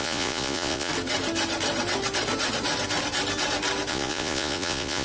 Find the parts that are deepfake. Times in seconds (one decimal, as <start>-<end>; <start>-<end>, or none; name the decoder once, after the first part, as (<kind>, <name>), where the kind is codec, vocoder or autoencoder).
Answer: 0.0-0.9 (vocoder, Vocos); 3.9-5.0